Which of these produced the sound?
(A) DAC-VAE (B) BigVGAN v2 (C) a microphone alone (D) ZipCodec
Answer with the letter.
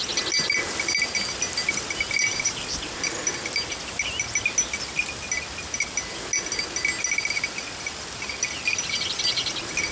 C